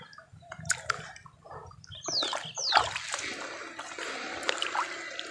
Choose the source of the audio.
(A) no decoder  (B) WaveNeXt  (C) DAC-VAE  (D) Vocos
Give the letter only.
A